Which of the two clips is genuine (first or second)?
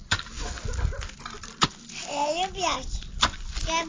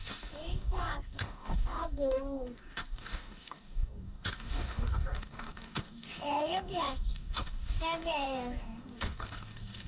first